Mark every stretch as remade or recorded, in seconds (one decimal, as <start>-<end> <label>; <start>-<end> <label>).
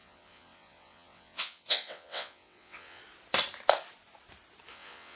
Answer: 0.0-3.0 remade; 3.0-4.7 recorded; 4.7-5.2 remade